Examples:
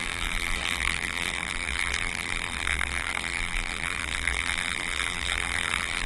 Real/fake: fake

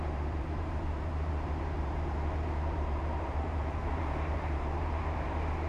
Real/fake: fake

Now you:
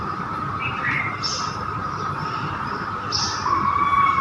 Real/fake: fake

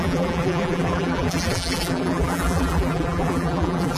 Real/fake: fake